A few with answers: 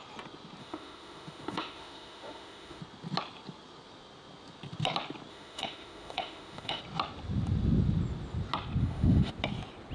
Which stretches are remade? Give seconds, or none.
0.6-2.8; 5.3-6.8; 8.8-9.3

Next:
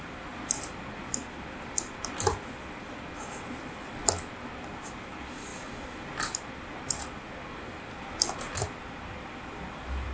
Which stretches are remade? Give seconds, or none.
none

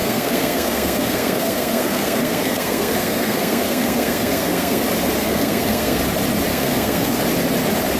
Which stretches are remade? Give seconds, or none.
0.0-4.8; 5.2-6.0; 6.5-7.2

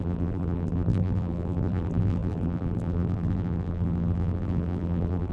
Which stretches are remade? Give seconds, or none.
0.0-5.3

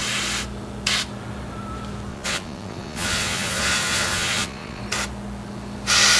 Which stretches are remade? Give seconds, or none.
2.1-4.8

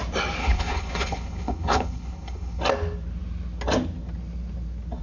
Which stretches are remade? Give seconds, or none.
0.4-2.6

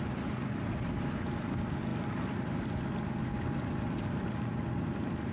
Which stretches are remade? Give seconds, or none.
none

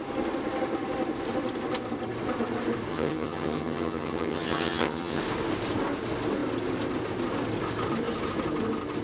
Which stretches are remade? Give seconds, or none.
2.9-5.2